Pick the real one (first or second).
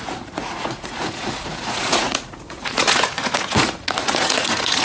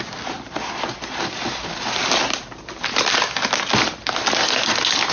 second